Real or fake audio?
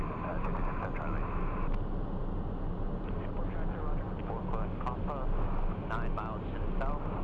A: real